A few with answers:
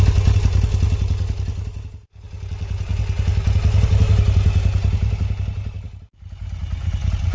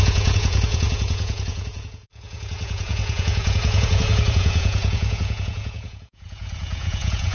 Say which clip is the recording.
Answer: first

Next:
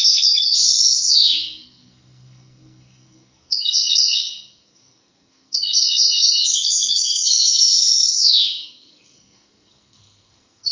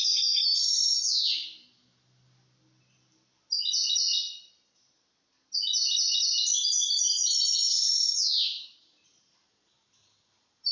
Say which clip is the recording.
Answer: second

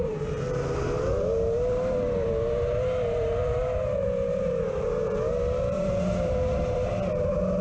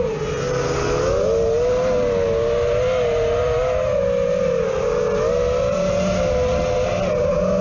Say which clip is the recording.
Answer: second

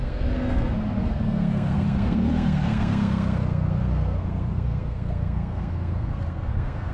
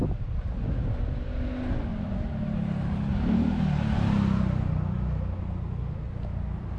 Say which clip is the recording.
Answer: second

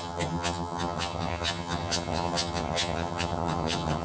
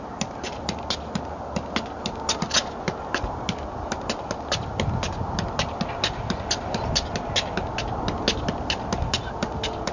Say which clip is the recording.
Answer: second